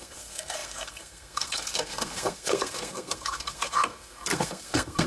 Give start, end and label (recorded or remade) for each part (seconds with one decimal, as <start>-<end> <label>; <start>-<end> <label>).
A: 0.0-5.1 remade